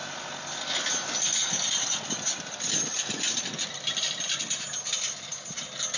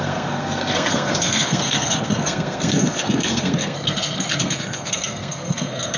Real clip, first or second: first